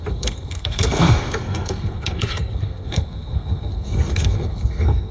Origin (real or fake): fake